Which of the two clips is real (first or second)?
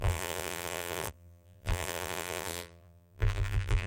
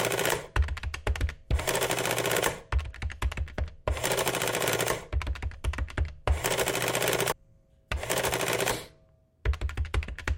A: second